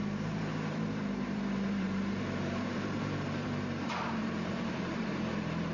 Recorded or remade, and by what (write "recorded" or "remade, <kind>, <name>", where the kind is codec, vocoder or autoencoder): remade, vocoder, BigVGAN v2